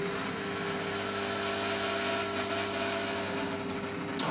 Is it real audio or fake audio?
real